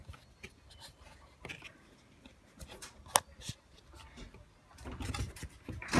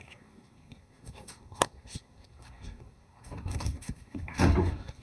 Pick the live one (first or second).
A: first